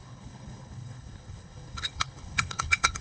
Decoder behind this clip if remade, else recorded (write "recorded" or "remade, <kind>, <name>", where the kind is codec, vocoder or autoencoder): remade, codec, HILCodec